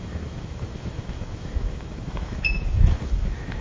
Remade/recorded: remade